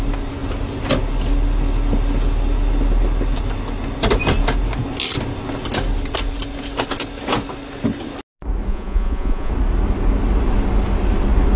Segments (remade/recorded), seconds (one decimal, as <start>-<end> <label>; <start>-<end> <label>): 0.0-8.7 recorded; 8.7-9.5 remade; 9.5-11.6 recorded